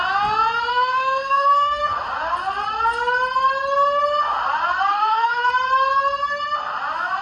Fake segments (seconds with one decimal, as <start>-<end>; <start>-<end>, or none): 0.7-1.8; 4.9-5.5